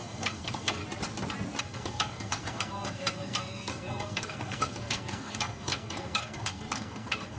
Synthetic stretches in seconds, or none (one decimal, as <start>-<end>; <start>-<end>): 0.0-0.8; 1.6-7.4